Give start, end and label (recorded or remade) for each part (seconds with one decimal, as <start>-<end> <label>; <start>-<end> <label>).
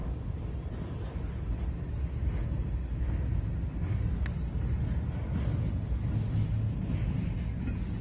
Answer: 0.0-8.0 recorded